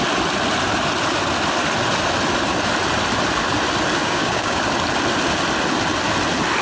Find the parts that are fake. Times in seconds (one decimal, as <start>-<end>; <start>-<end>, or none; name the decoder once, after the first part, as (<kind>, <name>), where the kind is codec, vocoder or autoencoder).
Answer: 4.0-4.6 (codec, DAC)

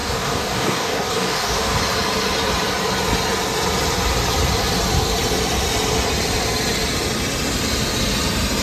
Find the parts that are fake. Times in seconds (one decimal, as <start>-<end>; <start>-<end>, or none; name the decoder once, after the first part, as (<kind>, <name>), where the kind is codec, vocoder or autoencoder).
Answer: 0.0-1.8 (codec, DAC)

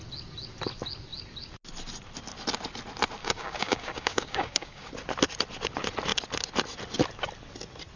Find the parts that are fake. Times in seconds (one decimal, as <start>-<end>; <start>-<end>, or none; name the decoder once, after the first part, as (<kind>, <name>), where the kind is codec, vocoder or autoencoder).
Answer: 3.2-4.9 (codec, DAC)